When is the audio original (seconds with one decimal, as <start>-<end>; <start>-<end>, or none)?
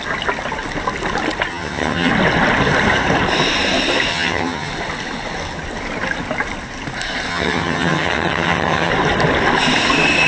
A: 0.0-1.5; 2.1-4.1; 4.7-7.3; 8.9-10.3